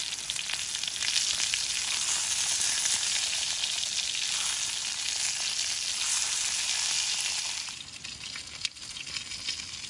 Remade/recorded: recorded